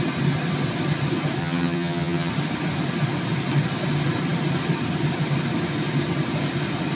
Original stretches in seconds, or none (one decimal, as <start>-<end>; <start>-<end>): 0.0-1.4; 2.3-6.9